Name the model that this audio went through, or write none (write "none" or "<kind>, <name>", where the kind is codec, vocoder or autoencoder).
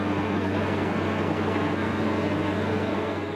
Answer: codec, SNAC